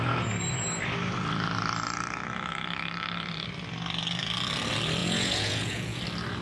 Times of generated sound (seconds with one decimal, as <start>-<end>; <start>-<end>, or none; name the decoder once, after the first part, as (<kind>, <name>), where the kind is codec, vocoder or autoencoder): 5.0-6.0 (vocoder, Vocos)